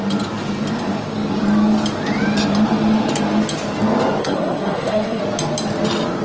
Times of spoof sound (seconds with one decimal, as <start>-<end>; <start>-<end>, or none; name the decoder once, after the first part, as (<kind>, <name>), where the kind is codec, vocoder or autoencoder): 4.2-5.2 (codec, SNAC)